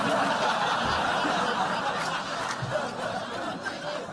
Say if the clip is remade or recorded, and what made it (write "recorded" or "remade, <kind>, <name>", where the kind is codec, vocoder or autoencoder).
recorded